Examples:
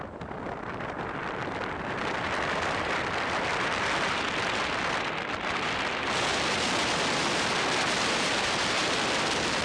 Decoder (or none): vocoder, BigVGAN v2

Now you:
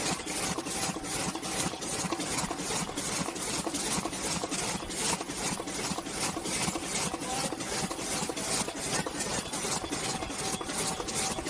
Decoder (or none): none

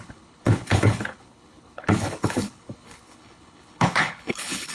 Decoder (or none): codec, HILCodec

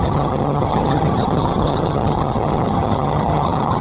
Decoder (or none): vocoder, HiFi-GAN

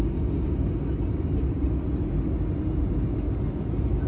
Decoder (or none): none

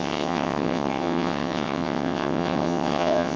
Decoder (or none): vocoder, WaveNeXt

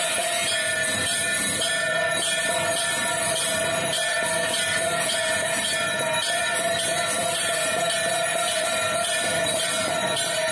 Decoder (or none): vocoder, BigVGAN v2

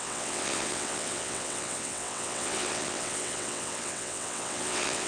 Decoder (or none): vocoder, WaveNeXt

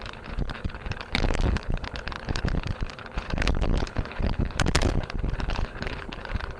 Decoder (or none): codec, HILCodec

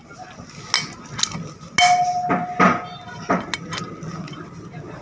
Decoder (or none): none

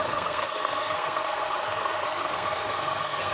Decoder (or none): codec, SNAC